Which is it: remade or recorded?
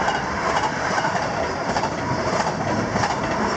recorded